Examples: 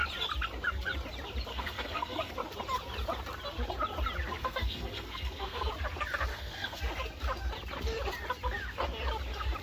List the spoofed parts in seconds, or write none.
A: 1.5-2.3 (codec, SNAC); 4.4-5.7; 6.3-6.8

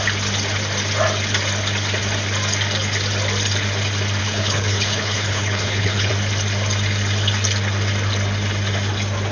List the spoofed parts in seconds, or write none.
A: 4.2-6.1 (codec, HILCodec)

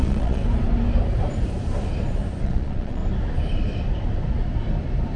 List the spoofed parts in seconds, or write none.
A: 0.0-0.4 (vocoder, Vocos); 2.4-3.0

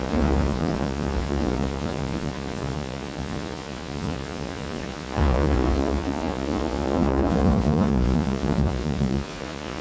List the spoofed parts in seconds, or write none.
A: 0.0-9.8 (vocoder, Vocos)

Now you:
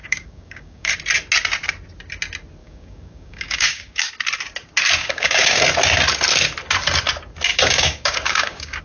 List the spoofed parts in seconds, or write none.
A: 0.0-0.9 (codec, DAC); 2.6-4.1; 5.0-5.6; 7.5-8.8

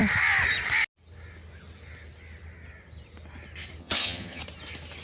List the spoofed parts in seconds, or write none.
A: 3.8-4.4 (vocoder, HiFi-GAN)